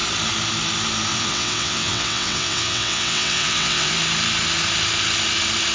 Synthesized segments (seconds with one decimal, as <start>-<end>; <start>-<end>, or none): 1.1-3.9